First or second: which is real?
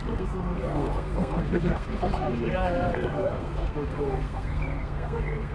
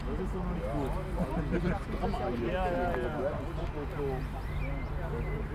second